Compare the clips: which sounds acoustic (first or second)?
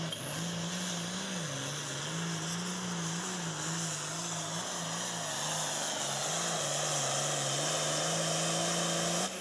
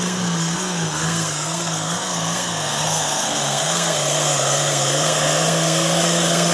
first